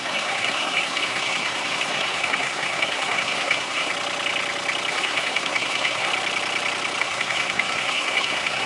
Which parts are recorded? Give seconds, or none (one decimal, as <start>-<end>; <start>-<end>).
3.9-4.9; 6.1-7.0